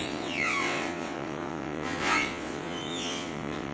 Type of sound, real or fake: fake